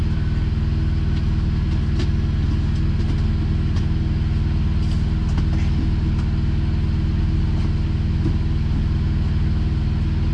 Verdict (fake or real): real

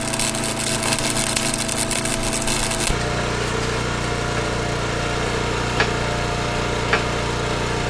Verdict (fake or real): real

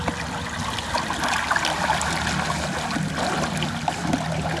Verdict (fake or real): real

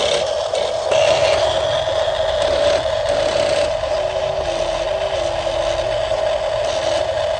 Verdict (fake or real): real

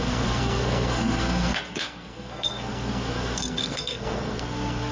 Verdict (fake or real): fake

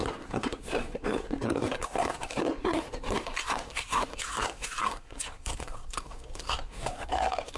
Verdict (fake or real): fake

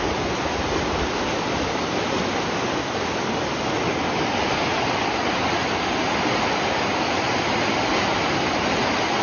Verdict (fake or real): real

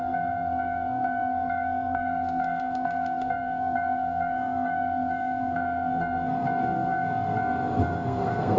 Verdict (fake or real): fake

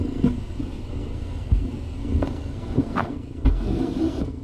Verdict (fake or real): fake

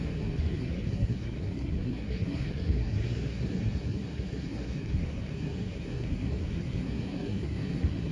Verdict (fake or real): fake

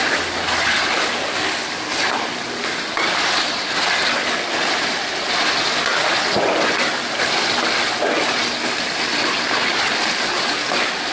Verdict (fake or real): real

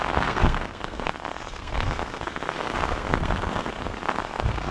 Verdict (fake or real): fake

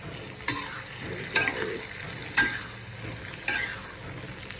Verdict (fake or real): real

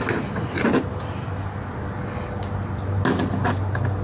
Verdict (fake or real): real